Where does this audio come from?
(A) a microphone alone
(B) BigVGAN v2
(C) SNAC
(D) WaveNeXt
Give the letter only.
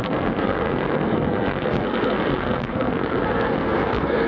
C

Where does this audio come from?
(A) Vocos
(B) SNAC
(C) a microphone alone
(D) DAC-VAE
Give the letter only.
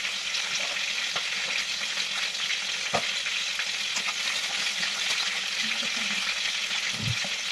C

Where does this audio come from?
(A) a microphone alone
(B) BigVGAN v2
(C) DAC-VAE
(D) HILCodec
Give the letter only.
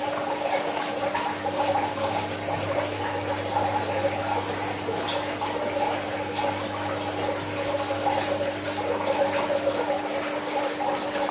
A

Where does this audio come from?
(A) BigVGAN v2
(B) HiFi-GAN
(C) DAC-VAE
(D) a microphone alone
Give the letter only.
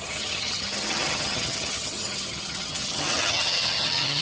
B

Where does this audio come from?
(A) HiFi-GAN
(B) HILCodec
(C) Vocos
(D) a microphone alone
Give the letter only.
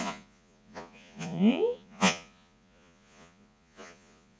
C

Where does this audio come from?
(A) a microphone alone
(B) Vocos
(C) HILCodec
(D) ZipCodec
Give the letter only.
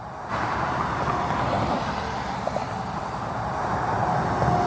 A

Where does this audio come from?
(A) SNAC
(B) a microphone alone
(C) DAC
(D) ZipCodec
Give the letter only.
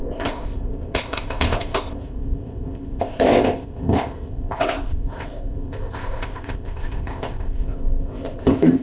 D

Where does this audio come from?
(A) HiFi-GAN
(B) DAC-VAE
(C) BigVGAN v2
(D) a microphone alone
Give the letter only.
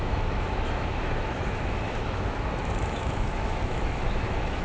B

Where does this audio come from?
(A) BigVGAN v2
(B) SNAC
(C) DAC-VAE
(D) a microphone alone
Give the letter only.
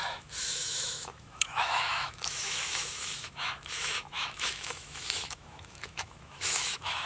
C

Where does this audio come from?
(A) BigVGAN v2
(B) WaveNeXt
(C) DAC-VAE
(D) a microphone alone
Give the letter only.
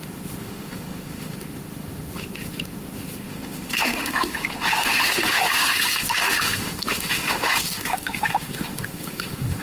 C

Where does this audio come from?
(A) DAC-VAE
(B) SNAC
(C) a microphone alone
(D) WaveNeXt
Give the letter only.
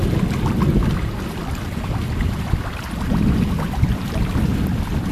C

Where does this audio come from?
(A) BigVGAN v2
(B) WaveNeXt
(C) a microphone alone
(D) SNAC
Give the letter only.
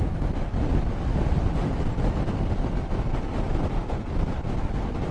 C